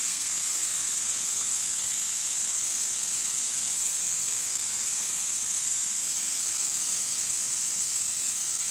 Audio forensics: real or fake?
fake